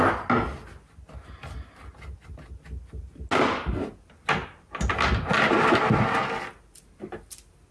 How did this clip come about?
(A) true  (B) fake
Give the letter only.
A